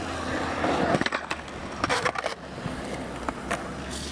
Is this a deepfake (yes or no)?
no